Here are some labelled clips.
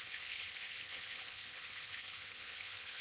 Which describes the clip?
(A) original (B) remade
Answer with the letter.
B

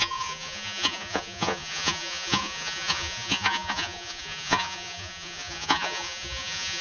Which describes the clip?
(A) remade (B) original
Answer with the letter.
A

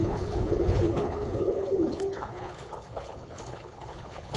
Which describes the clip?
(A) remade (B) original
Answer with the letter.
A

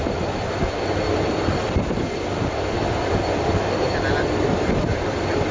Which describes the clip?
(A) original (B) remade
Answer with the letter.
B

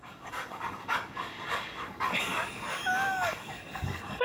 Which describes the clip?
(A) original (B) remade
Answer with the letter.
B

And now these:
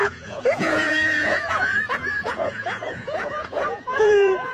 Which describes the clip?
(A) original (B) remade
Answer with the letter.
B